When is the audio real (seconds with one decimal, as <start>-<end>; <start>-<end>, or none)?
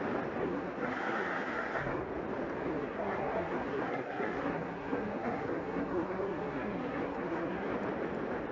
0.0-0.4; 2.0-2.6; 7.7-8.5